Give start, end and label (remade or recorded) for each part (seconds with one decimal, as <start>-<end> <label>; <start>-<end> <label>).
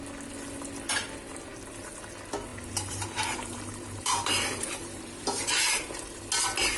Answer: 0.0-2.5 recorded; 2.5-6.2 remade; 6.2-6.8 recorded